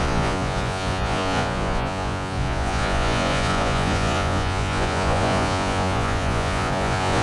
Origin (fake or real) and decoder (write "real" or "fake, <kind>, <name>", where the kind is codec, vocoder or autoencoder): fake, vocoder, Vocos